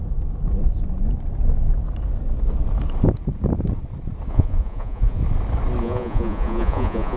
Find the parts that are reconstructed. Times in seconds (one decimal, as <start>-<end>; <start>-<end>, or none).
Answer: 4.3-5.2; 5.8-7.2